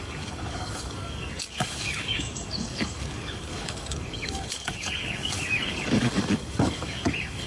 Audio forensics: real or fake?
fake